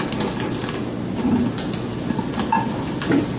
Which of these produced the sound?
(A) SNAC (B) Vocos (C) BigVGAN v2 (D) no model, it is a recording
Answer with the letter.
D